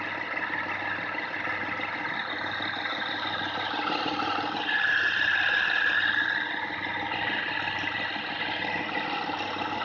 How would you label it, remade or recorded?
remade